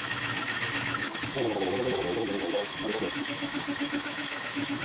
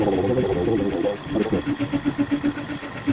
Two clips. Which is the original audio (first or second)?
second